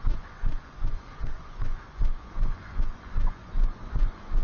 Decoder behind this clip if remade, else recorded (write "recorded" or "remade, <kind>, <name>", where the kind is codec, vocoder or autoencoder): remade, vocoder, Vocos